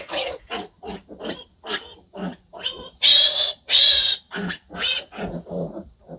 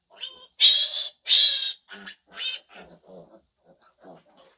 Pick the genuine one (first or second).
second